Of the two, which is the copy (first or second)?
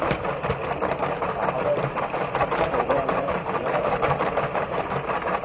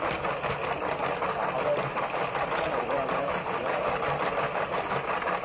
first